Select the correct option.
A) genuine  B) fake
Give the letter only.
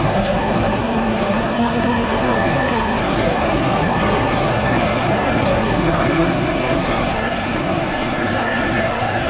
B